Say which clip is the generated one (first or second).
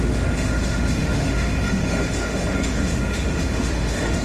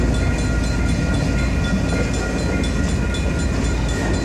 first